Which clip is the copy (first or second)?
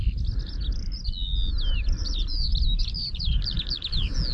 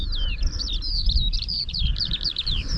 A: second